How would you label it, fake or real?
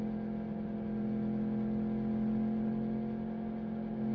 real